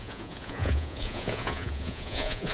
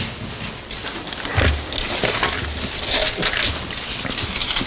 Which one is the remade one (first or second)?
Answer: first